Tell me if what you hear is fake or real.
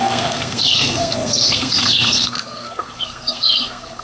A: fake